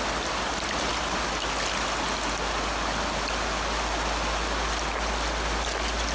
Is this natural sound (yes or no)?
yes